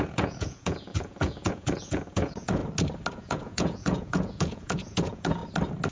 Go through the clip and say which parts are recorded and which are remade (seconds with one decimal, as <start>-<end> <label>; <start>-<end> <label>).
0.0-2.6 remade; 2.6-3.1 recorded; 3.1-5.4 remade; 5.4-5.9 recorded